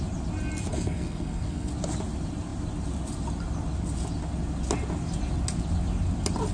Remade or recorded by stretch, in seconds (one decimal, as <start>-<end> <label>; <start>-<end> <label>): 0.0-0.7 recorded; 0.7-1.7 remade; 1.7-6.5 recorded